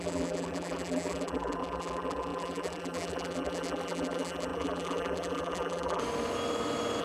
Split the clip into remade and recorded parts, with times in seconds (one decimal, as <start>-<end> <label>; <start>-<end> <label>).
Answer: 0.0-6.0 remade; 6.0-7.0 recorded

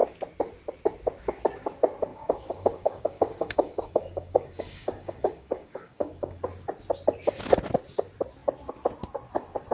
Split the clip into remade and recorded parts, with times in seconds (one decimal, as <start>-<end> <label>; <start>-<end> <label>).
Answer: 0.0-2.1 recorded; 2.1-6.4 remade; 6.4-9.7 recorded

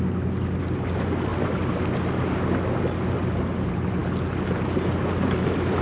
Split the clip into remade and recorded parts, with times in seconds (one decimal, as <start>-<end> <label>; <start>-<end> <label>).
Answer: 0.0-5.8 recorded

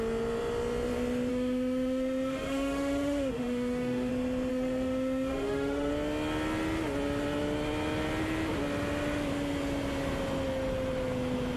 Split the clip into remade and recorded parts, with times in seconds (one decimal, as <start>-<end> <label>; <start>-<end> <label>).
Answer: 0.0-1.3 recorded; 1.3-4.1 remade; 4.1-4.5 recorded; 4.5-5.9 remade; 5.9-11.6 recorded

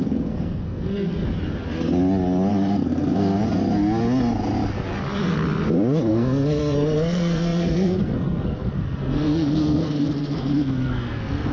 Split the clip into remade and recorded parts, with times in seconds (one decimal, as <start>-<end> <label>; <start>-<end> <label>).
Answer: 0.0-1.1 remade; 1.1-2.5 recorded; 2.5-3.4 remade; 3.4-6.1 recorded; 6.1-11.5 remade